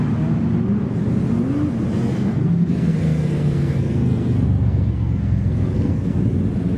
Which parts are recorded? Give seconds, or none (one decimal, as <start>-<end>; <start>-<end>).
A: 0.0-2.1; 6.2-6.8